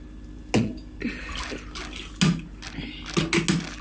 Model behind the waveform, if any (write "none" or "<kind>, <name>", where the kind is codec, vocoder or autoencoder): none